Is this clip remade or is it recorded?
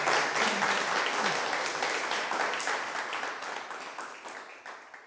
recorded